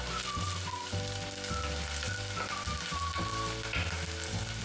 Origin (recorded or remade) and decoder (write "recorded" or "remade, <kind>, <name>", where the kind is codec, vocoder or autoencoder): recorded